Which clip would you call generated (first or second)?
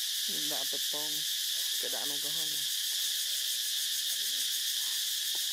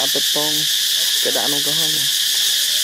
first